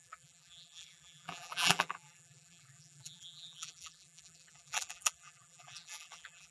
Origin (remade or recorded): remade